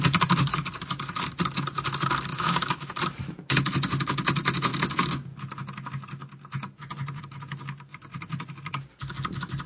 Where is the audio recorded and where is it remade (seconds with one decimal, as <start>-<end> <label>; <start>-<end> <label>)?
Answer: 0.0-2.3 recorded; 2.3-3.0 remade; 3.0-9.7 recorded